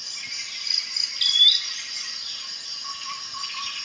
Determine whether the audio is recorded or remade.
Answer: recorded